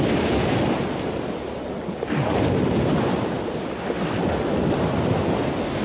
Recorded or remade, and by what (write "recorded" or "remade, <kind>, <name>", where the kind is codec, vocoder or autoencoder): recorded